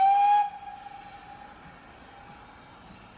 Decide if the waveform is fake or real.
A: real